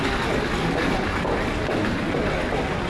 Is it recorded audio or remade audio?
recorded